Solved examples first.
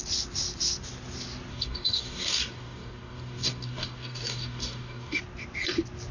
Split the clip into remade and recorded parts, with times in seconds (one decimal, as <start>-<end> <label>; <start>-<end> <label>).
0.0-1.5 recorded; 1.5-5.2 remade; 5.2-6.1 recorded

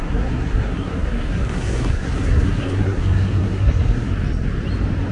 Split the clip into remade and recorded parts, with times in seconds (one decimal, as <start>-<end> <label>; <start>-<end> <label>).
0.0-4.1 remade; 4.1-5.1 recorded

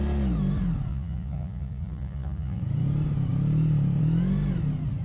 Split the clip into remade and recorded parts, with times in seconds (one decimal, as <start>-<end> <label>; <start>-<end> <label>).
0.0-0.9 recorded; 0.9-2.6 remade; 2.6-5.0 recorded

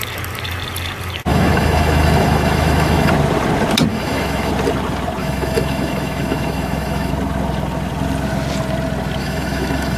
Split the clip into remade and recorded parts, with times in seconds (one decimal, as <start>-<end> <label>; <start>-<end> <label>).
0.0-1.3 recorded; 1.3-3.1 remade; 3.1-3.9 recorded; 3.9-4.5 remade; 4.5-5.2 recorded; 5.2-7.1 remade; 7.1-9.2 recorded; 9.2-10.0 remade